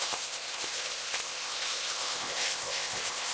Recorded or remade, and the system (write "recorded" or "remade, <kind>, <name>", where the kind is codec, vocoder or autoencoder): remade, codec, ZipCodec